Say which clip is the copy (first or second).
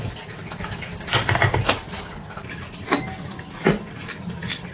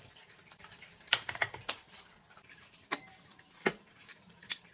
second